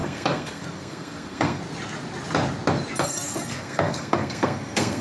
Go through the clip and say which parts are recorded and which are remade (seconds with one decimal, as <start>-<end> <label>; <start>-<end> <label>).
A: 0.0-1.6 remade; 1.6-3.1 recorded; 3.1-5.0 remade